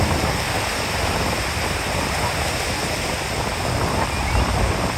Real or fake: real